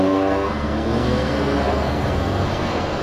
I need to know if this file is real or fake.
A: fake